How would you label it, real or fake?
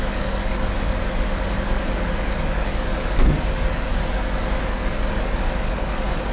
fake